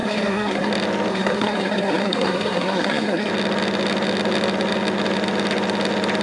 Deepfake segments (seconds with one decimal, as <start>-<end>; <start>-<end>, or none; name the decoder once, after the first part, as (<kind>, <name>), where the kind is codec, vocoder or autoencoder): 0.0-0.7 (codec, SNAC); 1.1-3.3